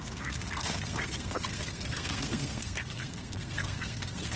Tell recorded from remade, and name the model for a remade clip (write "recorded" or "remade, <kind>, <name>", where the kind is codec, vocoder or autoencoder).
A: remade, codec, SNAC